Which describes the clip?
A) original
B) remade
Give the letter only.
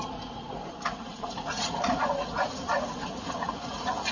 B